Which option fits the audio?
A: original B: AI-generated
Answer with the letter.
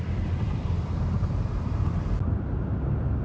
A